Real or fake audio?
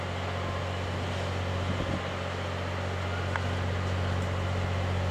real